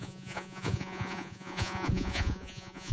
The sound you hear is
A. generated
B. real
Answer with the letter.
A